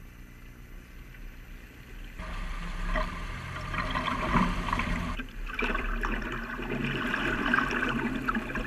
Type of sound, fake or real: fake